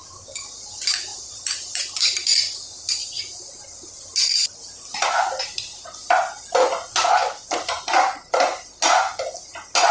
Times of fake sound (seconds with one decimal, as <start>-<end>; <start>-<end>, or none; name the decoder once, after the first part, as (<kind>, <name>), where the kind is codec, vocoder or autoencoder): 1.1-1.8 (vocoder, BigVGAN v2); 3.0-3.5